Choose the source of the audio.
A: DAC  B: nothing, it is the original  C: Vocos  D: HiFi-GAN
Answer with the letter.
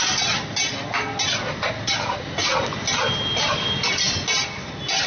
B